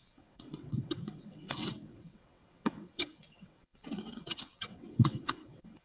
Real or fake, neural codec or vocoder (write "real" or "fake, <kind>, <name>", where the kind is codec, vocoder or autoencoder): fake, vocoder, WaveNeXt